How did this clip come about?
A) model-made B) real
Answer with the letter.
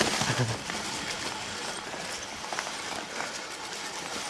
B